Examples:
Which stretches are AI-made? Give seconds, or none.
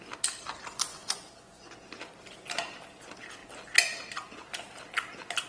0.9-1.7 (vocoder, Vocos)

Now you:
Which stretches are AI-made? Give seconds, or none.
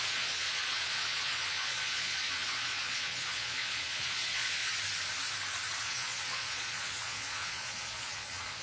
0.0-4.7 (vocoder, Vocos); 5.8-8.6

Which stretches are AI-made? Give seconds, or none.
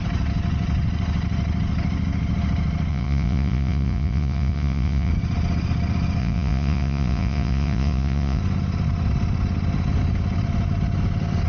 2.9-5.1 (vocoder, Vocos); 6.2-8.4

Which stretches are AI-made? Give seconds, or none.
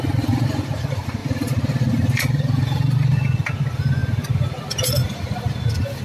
none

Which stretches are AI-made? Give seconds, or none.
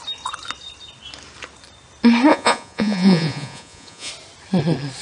2.3-4.1 (vocoder, Vocos)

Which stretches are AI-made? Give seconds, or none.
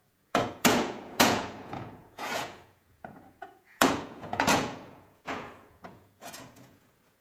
0.0-7.2 (vocoder, Vocos)